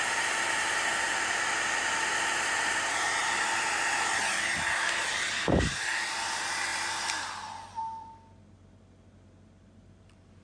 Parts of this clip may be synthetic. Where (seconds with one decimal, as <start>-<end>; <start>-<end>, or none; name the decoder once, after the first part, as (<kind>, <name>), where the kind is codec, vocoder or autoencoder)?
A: none